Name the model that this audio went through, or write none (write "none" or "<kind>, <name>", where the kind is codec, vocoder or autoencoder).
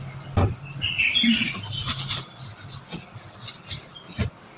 none